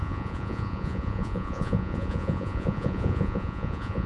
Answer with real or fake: fake